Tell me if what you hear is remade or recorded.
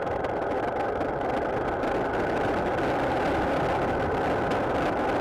recorded